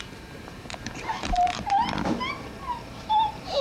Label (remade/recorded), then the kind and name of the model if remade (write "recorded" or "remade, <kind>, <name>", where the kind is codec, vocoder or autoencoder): remade, vocoder, BigVGAN v2